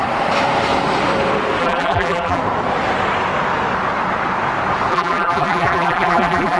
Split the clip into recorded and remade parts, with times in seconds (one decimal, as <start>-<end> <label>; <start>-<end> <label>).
0.0-1.6 recorded; 1.6-2.4 remade; 2.4-4.9 recorded; 4.9-6.6 remade